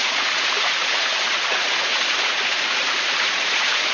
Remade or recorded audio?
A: remade